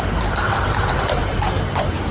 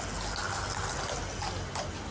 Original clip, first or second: second